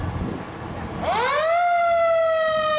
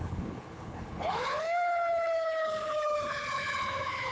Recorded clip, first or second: first